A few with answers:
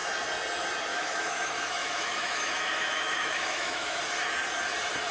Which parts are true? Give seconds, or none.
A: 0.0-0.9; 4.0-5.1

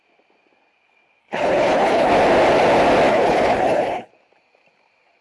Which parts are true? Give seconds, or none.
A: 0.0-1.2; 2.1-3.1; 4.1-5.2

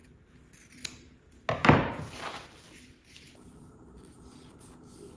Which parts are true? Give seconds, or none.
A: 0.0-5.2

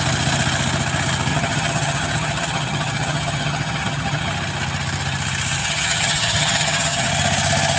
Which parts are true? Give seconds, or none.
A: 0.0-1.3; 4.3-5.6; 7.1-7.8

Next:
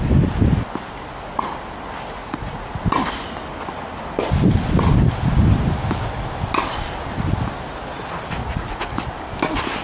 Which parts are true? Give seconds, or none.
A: 0.0-2.2; 2.7-8.4; 9.0-9.8

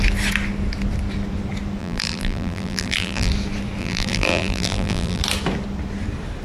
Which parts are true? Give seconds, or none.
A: 0.0-1.8; 3.3-3.8; 5.2-6.4

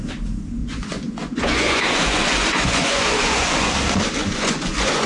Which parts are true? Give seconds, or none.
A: 0.0-0.6; 3.7-4.2

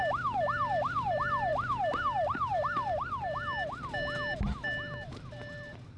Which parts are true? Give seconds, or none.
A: 0.0-6.0